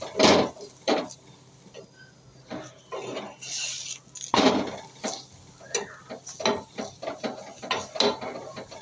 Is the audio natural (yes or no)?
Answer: yes